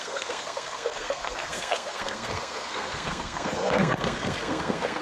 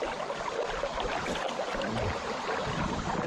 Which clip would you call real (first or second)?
second